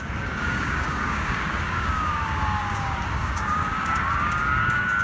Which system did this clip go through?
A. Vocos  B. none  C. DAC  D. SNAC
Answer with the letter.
C